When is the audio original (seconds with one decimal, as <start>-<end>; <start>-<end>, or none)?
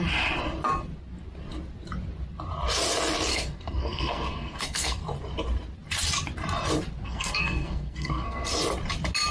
0.0-3.3; 5.0-7.0; 8.5-9.3